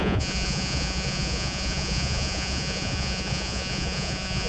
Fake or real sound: fake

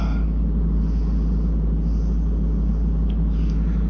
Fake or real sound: real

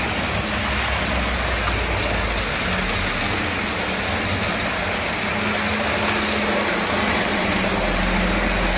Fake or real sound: real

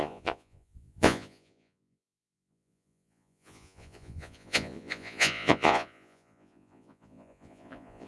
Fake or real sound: fake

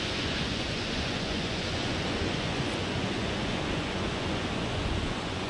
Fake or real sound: fake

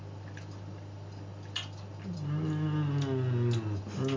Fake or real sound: real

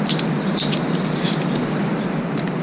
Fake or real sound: real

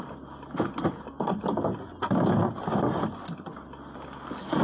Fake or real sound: real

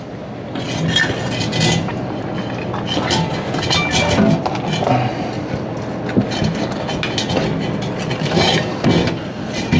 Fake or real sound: real